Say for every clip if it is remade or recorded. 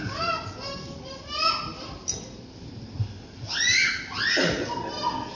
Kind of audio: recorded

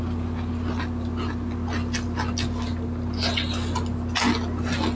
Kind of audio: recorded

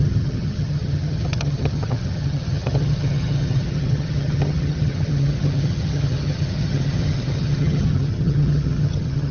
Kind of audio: remade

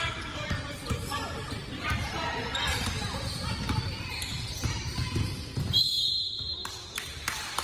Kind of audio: remade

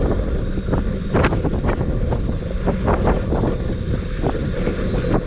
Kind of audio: recorded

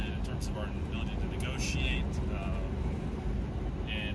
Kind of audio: recorded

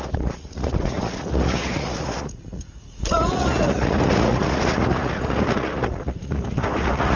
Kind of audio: remade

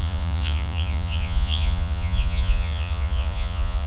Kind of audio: remade